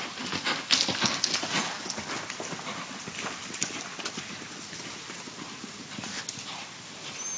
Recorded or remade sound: recorded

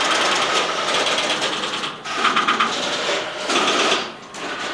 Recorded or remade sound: recorded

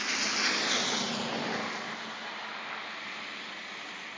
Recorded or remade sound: recorded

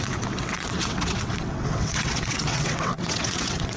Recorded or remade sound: remade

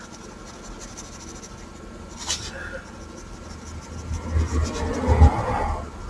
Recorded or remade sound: recorded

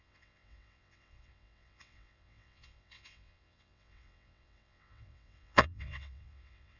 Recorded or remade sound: remade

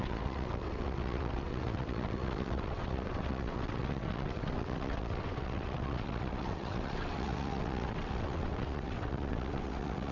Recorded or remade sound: remade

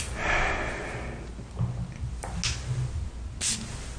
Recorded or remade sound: recorded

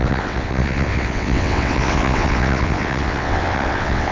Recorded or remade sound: remade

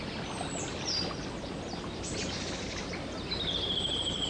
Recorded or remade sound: recorded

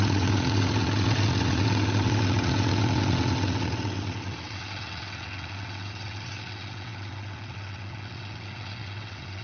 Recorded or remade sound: remade